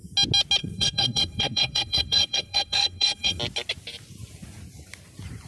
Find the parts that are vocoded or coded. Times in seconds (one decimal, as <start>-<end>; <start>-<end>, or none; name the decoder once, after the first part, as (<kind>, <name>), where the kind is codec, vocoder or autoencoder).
0.6-3.4 (codec, SNAC)